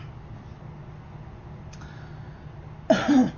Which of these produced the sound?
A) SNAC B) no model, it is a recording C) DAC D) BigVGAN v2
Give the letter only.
B